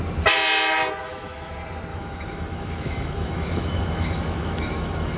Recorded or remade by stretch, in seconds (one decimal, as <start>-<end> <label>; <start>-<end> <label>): 0.0-1.0 recorded; 1.0-1.5 remade; 1.5-1.9 recorded; 1.9-5.2 remade